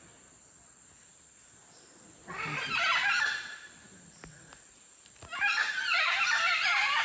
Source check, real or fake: real